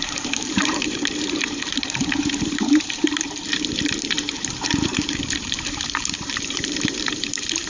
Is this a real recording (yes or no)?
no